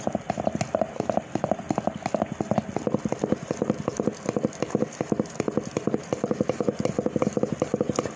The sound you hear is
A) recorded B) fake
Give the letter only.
A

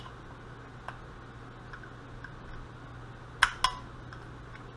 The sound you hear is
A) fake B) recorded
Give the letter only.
B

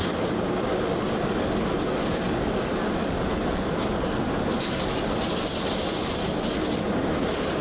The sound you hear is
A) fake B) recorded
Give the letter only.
B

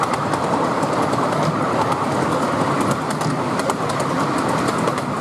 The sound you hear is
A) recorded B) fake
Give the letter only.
A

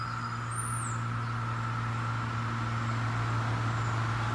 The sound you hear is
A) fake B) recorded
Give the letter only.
B